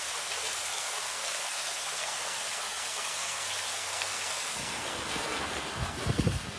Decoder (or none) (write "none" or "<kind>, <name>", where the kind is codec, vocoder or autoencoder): codec, SNAC